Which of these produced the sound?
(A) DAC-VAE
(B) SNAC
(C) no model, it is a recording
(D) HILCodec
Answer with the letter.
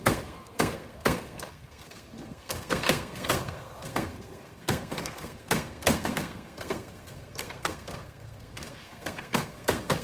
B